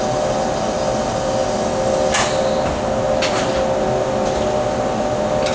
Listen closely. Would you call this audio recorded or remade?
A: recorded